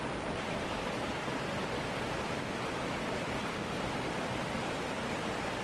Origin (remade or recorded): recorded